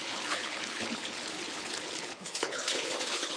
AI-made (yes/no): yes